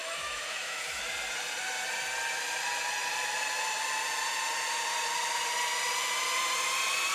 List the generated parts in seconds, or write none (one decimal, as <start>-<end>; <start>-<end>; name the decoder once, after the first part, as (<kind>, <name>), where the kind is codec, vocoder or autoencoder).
0.0-1.0 (autoencoder, DAC-VAE)